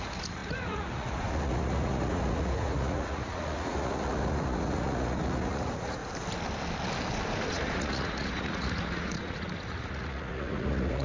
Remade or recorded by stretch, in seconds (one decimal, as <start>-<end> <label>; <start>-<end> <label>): 0.0-6.0 remade; 6.0-7.5 recorded; 7.5-11.0 remade